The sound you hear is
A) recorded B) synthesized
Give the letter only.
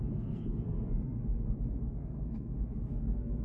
B